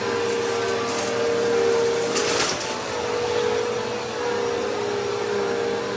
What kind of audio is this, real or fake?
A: real